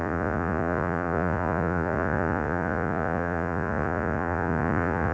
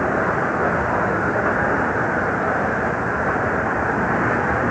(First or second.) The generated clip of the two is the first